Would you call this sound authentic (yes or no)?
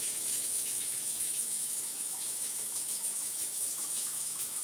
no